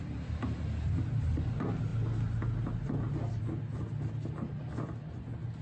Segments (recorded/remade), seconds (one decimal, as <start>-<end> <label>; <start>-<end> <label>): 0.0-5.6 recorded